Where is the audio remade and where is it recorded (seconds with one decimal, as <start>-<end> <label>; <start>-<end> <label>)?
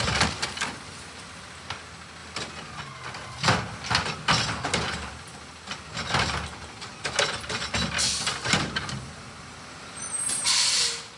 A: 0.0-11.2 recorded